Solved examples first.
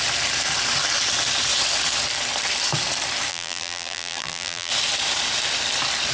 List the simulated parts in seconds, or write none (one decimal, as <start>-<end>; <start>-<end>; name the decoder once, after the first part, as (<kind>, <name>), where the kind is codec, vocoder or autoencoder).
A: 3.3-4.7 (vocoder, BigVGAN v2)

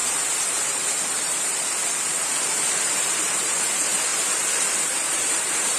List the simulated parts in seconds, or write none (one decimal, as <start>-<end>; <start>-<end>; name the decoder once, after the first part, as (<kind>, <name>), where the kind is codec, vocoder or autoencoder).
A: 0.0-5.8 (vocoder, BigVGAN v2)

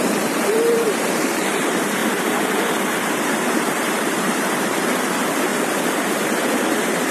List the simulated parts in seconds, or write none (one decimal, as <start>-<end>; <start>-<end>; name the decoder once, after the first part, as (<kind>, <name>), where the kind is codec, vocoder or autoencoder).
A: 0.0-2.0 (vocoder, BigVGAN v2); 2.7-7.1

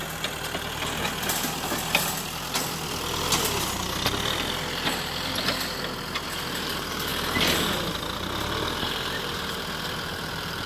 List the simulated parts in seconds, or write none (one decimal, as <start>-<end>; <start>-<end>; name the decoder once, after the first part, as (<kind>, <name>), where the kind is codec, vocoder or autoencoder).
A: none

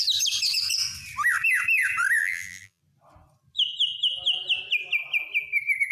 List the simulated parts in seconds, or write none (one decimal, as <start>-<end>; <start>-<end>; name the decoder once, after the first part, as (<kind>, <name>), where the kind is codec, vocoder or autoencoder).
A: 2.2-2.8 (vocoder, BigVGAN v2)